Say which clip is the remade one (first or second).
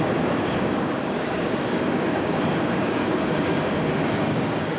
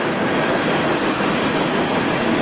first